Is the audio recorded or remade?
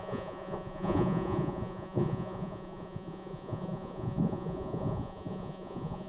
remade